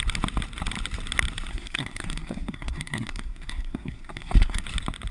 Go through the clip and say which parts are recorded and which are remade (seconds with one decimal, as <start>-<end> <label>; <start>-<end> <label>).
0.0-1.5 recorded; 1.5-4.6 remade; 4.6-5.1 recorded